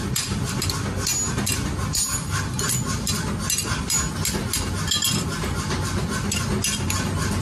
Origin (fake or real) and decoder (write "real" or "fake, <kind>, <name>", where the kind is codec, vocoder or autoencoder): real